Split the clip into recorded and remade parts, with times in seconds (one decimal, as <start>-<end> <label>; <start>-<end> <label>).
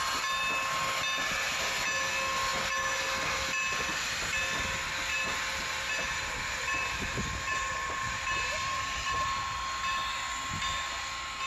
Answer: 0.0-5.1 recorded; 5.1-9.6 remade; 9.6-11.5 recorded